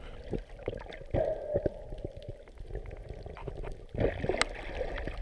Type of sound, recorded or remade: recorded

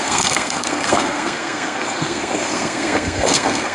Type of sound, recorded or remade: remade